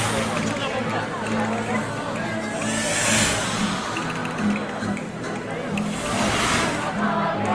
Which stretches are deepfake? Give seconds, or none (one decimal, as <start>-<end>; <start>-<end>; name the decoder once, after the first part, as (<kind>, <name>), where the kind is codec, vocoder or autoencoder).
none